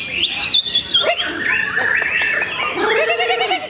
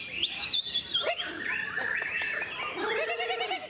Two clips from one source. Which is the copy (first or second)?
second